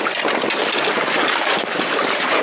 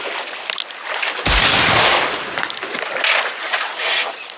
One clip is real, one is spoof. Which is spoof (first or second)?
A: first